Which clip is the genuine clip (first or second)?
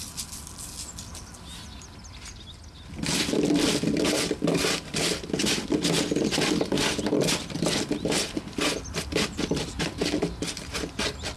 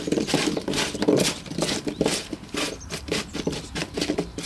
first